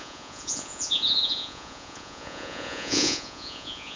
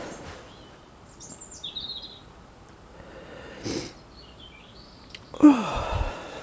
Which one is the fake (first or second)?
first